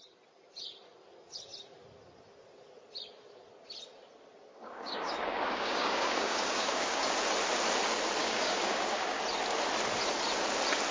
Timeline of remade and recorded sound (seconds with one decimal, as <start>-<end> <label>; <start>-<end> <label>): 0.0-4.5 recorded; 4.5-7.1 remade; 7.1-8.2 recorded; 8.2-9.2 remade; 9.2-10.9 recorded